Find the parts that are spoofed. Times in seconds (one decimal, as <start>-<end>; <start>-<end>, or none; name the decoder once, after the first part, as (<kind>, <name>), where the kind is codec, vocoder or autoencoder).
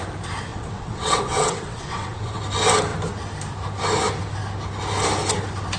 0.5-2.4 (vocoder, WaveNeXt)